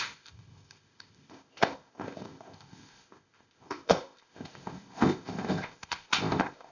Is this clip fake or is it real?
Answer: fake